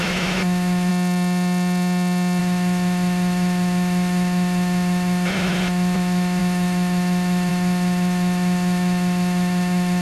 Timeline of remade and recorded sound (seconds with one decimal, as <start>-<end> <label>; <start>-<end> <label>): 0.0-0.9 remade; 0.9-2.4 recorded; 2.4-10.0 remade